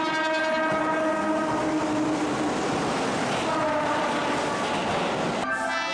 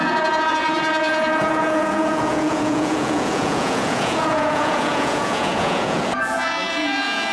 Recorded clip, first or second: first